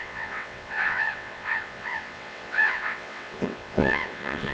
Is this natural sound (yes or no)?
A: no